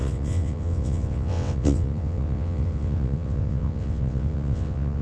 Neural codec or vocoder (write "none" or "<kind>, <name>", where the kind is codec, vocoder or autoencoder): vocoder, WaveNeXt